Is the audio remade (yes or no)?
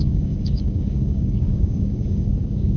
yes